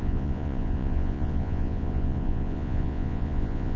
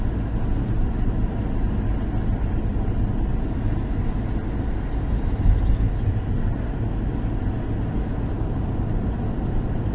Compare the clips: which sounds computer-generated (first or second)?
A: first